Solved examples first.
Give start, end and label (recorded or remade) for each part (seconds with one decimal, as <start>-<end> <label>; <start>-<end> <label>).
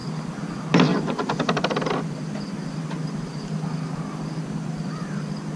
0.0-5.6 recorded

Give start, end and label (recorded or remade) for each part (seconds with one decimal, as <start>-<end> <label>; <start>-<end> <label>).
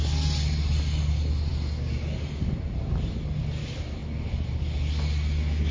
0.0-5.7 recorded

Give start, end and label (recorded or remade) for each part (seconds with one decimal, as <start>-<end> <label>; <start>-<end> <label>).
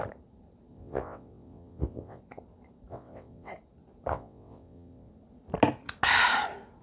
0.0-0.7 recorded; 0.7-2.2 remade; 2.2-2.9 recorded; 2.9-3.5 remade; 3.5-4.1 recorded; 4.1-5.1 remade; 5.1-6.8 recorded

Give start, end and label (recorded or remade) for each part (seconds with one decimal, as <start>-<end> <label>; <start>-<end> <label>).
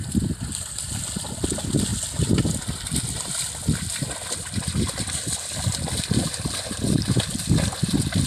0.0-8.3 recorded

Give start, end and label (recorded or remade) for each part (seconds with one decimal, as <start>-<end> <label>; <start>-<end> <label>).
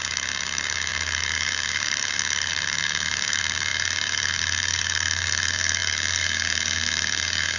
0.0-7.6 remade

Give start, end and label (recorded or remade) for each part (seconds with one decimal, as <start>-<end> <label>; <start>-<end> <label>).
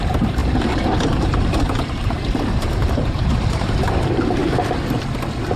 0.0-4.4 remade; 4.4-5.6 recorded